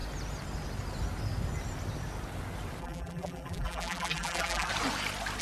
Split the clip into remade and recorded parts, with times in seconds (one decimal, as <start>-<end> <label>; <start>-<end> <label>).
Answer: 0.0-2.8 recorded; 2.8-4.7 remade; 4.7-5.4 recorded